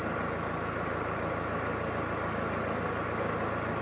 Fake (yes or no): no